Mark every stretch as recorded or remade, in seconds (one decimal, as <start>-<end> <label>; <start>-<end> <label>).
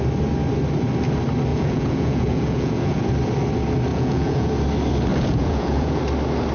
0.0-1.5 recorded; 1.5-3.1 remade; 3.1-3.9 recorded; 3.9-4.5 remade; 4.5-5.1 recorded; 5.1-6.0 remade; 6.0-6.5 recorded